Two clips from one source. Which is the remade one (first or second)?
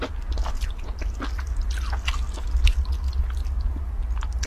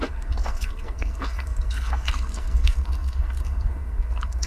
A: second